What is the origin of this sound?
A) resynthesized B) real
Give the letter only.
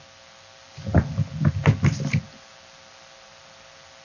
B